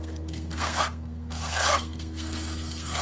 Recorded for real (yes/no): no